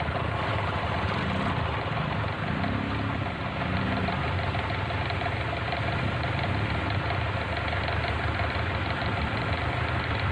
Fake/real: real